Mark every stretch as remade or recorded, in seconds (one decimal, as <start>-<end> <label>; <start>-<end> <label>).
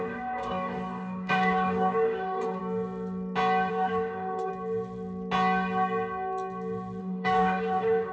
0.0-2.6 remade; 2.6-3.7 recorded; 3.7-4.5 remade; 4.5-7.0 recorded; 7.0-8.1 remade